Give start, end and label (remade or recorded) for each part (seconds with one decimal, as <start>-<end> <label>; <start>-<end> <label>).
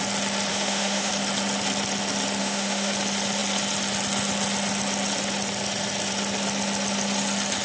0.0-0.5 recorded; 0.5-1.1 remade; 1.1-2.4 recorded; 2.4-2.9 remade; 2.9-7.6 recorded